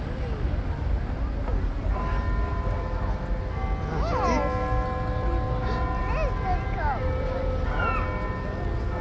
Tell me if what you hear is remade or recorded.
recorded